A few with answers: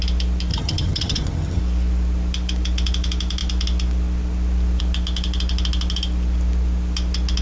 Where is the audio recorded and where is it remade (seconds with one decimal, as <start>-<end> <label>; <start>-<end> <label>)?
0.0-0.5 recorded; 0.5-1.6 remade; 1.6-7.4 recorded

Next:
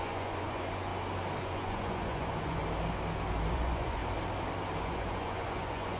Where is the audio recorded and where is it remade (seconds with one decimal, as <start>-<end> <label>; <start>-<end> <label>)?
0.0-0.9 remade; 0.9-1.4 recorded; 1.4-2.6 remade; 2.6-3.5 recorded; 3.5-4.0 remade; 4.0-4.8 recorded; 4.8-6.0 remade

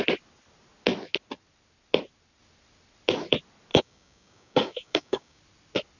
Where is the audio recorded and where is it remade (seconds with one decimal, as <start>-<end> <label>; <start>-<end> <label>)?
0.0-3.7 recorded; 3.7-5.4 remade; 5.4-6.0 recorded

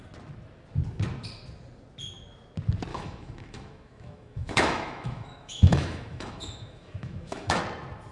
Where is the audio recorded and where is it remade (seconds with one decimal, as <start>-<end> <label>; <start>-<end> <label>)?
0.0-2.9 recorded; 2.9-7.6 remade; 7.6-8.1 recorded

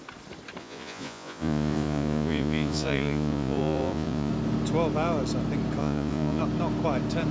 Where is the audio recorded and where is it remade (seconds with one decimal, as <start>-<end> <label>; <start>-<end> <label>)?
0.0-0.6 recorded; 0.6-4.3 remade; 4.3-5.8 recorded; 5.8-6.4 remade; 6.4-7.3 recorded

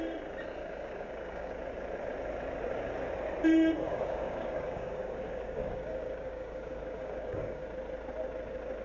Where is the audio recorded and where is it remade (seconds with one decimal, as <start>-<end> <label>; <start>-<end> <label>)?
0.0-0.6 recorded; 0.6-1.5 remade; 1.5-3.8 recorded; 3.8-7.6 remade; 7.6-8.8 recorded

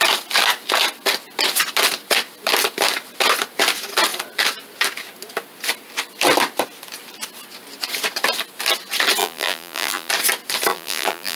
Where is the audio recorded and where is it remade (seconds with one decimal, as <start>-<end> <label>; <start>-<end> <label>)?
0.0-9.2 recorded; 9.2-10.1 remade; 10.1-10.7 recorded; 10.7-11.4 remade

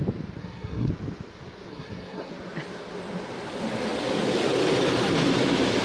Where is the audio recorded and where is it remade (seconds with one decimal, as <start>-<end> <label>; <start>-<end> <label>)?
0.0-0.4 recorded; 0.4-0.9 remade; 0.9-1.7 recorded; 1.7-2.3 remade; 2.3-5.8 recorded